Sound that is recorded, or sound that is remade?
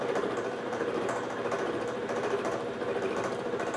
remade